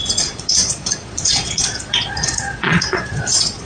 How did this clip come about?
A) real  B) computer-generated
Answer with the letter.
B